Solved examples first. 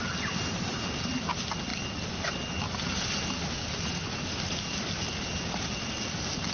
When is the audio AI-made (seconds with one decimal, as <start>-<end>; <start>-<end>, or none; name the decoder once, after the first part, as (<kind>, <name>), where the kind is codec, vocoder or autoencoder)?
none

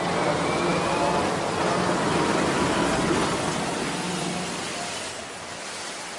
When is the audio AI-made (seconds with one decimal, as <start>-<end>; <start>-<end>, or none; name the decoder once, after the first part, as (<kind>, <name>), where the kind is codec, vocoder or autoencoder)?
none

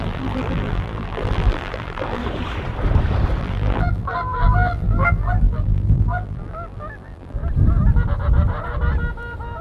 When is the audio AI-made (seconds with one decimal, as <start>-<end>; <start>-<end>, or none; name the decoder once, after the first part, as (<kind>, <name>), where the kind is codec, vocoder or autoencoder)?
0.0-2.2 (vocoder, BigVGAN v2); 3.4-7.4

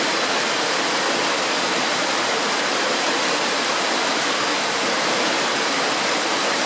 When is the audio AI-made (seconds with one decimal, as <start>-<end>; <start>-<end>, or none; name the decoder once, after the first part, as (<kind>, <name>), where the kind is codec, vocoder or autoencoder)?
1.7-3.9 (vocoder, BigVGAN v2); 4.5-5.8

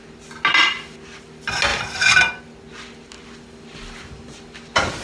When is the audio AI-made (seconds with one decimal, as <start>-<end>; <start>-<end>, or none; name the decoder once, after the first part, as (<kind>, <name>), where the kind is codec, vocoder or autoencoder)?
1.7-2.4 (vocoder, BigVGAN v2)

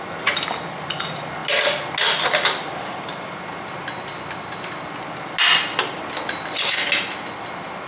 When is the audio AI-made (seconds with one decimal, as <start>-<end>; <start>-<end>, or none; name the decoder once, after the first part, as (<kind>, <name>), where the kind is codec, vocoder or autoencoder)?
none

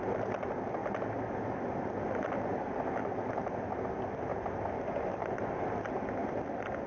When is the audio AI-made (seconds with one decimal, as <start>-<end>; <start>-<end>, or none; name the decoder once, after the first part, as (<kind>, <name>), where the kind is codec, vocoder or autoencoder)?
3.0-3.8 (vocoder, BigVGAN v2); 4.3-4.9

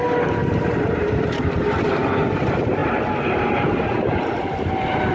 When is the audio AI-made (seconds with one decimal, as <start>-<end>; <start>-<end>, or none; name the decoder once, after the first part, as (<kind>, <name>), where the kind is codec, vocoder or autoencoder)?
0.4-2.1 (vocoder, BigVGAN v2); 2.8-4.6